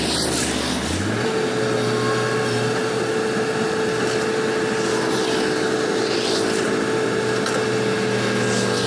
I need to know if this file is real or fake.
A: real